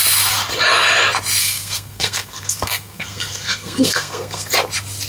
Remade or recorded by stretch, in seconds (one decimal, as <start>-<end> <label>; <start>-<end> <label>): 0.0-1.4 recorded; 1.4-4.5 remade; 4.5-5.1 recorded